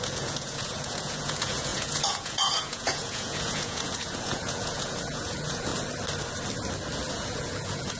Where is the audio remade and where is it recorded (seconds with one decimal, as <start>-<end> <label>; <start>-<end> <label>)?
0.0-5.7 remade; 5.7-7.1 recorded; 7.1-8.0 remade